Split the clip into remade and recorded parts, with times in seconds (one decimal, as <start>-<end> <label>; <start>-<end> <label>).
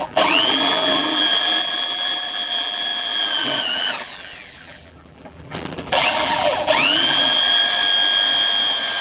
0.0-7.6 remade; 7.6-9.0 recorded